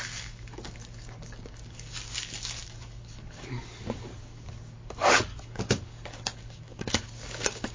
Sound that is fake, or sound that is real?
fake